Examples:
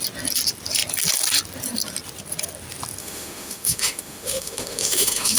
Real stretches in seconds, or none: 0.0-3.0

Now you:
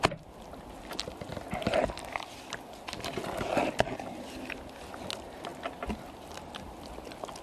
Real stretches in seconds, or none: 0.0-7.4

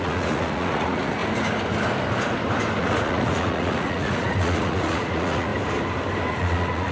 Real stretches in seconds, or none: 1.2-2.8; 5.5-6.3

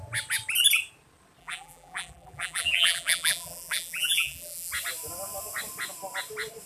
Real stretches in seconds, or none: 0.0-1.4; 4.7-6.7

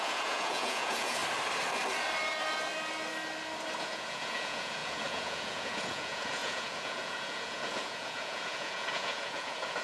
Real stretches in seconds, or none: 1.2-3.8